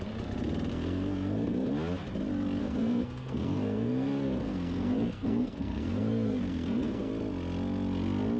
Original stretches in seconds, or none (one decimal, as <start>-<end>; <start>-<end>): 0.0-0.7; 1.7-2.6; 7.1-8.4